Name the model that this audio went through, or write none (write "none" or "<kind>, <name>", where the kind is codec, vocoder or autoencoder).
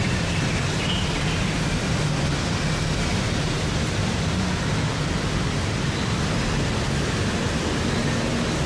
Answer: none